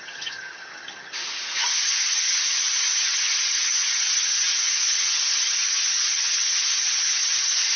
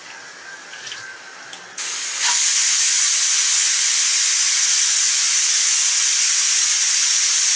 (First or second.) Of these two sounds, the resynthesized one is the first